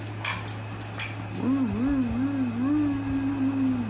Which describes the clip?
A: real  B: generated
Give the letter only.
A